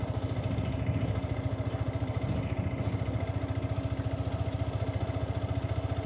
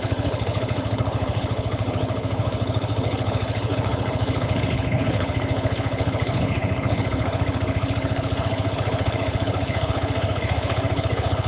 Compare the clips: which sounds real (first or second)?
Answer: first